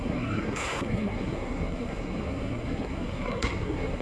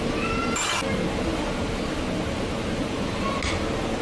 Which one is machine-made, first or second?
first